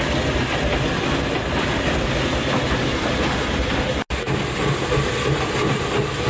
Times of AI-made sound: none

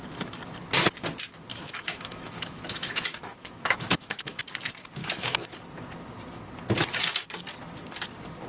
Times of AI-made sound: 1.5-4.4 (autoencoder, DAC-VAE); 5.0-5.5

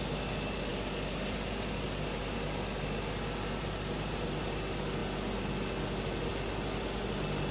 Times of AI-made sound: none

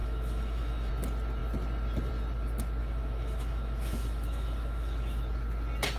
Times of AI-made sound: 0.0-0.9 (autoencoder, DAC-VAE); 2.8-5.2

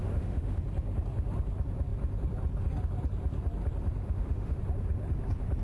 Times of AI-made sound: 0.0-0.6 (autoencoder, DAC-VAE); 4.0-4.6

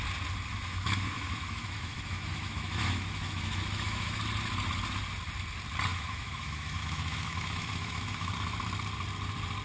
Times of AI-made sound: 0.5-4.2 (autoencoder, DAC-VAE); 5.9-8.3